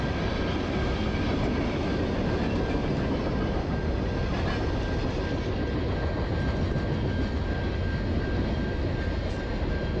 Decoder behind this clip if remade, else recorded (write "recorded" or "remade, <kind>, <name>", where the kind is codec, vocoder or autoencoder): recorded